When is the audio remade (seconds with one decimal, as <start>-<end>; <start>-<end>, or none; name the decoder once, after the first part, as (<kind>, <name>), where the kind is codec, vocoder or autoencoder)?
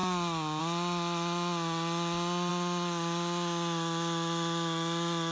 none